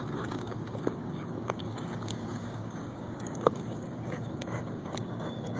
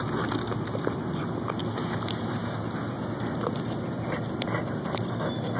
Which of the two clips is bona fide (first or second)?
second